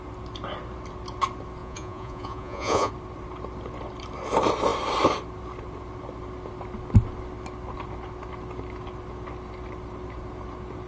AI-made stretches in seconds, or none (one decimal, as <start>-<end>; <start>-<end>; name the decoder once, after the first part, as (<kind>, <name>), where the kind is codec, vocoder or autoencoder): 1.6-2.9 (vocoder, Vocos)